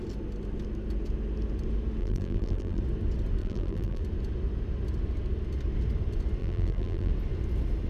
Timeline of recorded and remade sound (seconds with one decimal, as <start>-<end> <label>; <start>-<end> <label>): 0.0-2.0 recorded; 2.0-2.8 remade; 2.8-3.4 recorded; 3.4-4.0 remade; 4.0-6.4 recorded; 6.4-7.1 remade; 7.1-7.9 recorded